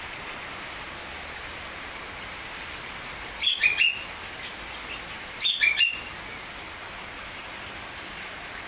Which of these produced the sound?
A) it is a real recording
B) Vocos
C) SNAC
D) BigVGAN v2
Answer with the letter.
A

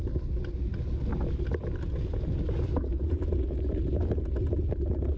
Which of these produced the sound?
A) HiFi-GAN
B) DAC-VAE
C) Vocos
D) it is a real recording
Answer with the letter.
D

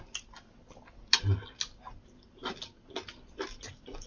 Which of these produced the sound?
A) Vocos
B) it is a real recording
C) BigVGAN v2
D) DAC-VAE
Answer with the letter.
B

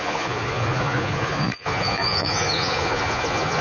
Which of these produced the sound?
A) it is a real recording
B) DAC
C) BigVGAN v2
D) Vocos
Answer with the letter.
D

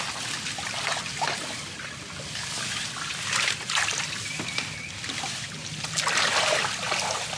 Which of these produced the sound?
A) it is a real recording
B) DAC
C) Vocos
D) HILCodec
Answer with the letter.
A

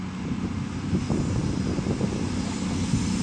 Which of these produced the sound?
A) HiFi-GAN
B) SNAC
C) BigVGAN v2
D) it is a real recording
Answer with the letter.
D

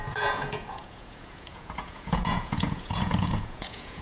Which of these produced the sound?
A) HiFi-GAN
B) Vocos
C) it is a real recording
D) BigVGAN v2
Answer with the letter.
B